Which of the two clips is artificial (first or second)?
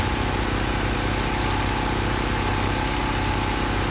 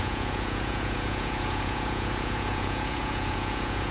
second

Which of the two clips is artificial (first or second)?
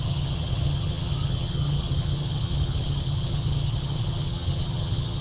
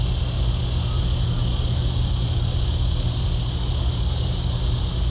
first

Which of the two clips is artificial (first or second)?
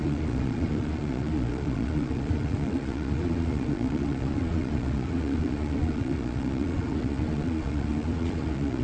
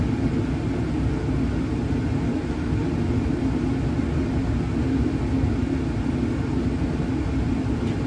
first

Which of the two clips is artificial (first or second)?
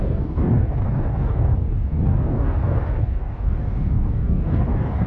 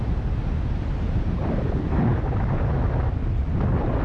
first